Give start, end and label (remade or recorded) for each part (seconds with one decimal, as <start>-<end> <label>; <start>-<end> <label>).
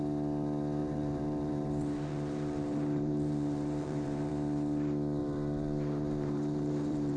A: 0.0-0.8 recorded; 0.8-4.3 remade; 4.3-5.2 recorded; 5.2-7.2 remade